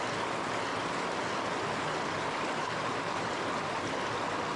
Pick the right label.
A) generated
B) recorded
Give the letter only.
B